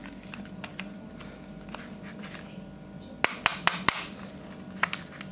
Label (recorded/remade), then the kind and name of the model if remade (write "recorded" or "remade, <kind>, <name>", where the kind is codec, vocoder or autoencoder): recorded